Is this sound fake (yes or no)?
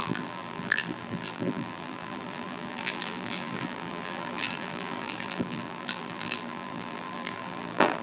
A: yes